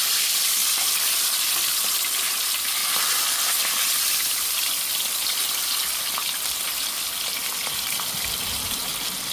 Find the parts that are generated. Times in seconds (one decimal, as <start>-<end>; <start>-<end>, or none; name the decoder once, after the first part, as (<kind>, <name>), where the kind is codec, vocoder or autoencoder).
0.6-1.7 (vocoder, BigVGAN v2); 2.8-3.6; 7.6-8.9